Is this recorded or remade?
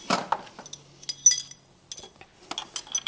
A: recorded